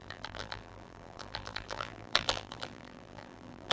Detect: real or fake fake